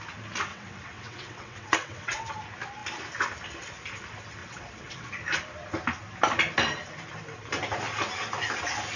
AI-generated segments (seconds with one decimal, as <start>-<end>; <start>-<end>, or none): 0.5-2.3; 4.4-5.1

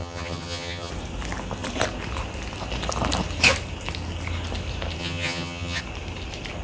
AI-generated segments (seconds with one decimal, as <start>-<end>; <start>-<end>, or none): 0.0-0.9; 5.0-5.8

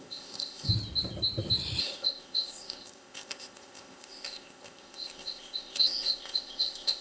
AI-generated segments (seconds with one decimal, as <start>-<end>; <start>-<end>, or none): 0.0-0.7; 1.8-7.0

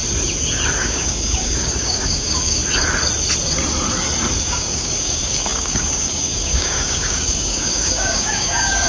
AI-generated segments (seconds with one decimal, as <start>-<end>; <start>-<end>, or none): 0.8-2.6; 4.4-8.9

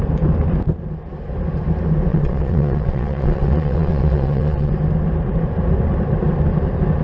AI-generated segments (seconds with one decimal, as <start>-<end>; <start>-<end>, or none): 2.1-4.7

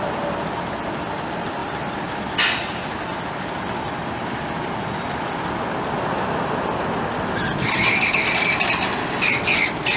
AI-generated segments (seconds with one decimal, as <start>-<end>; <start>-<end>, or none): 1.6-5.3

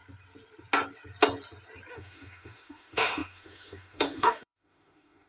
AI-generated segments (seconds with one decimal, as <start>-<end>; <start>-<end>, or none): 1.9-5.3

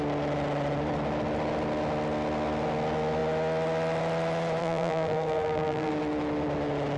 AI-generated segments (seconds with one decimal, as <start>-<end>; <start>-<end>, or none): 4.6-5.9